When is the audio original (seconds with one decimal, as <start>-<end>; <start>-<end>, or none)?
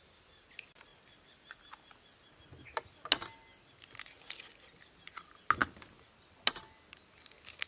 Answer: 0.0-7.7